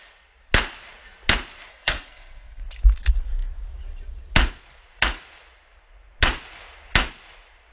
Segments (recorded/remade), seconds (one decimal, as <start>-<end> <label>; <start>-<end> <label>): 0.0-1.7 recorded; 1.7-2.6 remade; 2.6-7.7 recorded

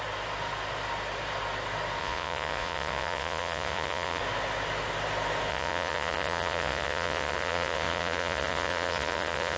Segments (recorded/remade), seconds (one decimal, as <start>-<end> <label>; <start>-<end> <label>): 0.0-2.0 recorded; 2.0-4.2 remade; 4.2-5.5 recorded; 5.5-9.6 remade

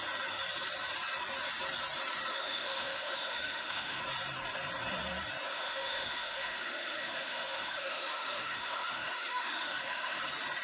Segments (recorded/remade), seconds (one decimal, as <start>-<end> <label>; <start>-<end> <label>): 0.0-2.3 recorded; 2.3-4.0 remade; 4.0-5.5 recorded; 5.5-10.2 remade; 10.2-10.6 recorded

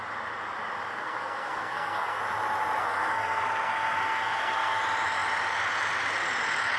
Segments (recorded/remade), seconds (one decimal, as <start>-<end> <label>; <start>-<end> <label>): 0.0-0.9 recorded; 0.9-2.2 remade; 2.2-2.8 recorded; 2.8-4.8 remade; 4.8-6.8 recorded